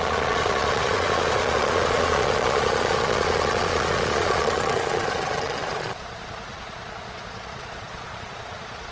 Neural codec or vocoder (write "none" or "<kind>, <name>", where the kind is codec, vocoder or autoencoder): vocoder, Vocos